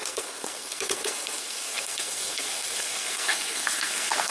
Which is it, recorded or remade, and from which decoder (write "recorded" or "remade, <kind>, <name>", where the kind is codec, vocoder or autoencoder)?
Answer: remade, codec, SNAC